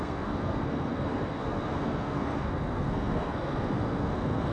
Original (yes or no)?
no